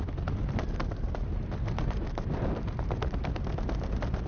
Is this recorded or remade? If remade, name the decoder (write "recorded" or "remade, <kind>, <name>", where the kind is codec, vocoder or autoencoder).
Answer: recorded